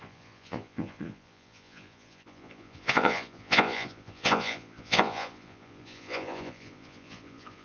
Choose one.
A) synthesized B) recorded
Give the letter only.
A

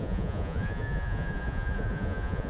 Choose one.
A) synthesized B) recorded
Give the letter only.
A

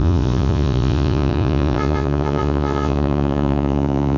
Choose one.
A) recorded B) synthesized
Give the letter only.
B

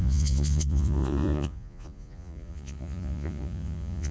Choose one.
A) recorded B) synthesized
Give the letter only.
B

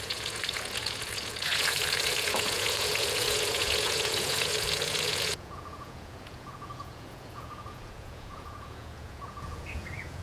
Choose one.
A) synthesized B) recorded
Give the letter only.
A